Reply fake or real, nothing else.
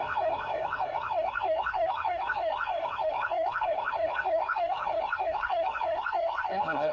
fake